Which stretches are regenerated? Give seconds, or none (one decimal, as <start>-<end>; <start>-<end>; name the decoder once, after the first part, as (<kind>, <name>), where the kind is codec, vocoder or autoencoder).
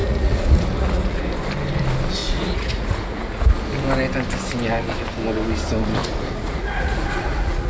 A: 0.0-1.3 (vocoder, Vocos); 2.2-3.4; 6.0-7.7